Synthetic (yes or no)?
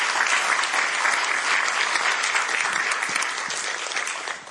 no